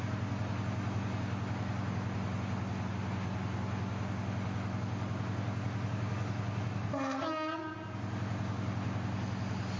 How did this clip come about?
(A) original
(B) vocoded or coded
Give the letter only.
A